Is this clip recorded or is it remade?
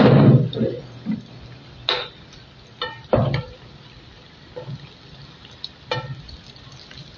recorded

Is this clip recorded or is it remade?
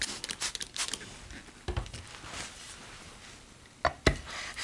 recorded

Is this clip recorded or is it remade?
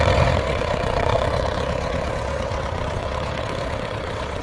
remade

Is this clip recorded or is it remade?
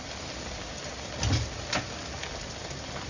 recorded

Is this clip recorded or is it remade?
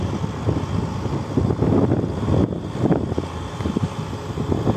recorded